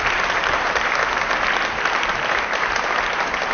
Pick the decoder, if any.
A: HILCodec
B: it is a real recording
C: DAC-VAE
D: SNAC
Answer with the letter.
B